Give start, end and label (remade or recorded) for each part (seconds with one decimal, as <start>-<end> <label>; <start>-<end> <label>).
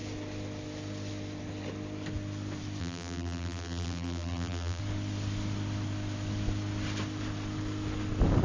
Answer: 0.0-2.8 recorded; 2.8-4.8 remade; 4.8-8.4 recorded